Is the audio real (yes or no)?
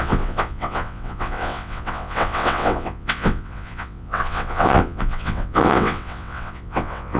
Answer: no